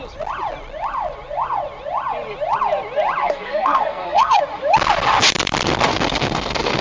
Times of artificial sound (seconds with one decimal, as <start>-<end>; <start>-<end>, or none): 3.2-4.4; 5.9-6.8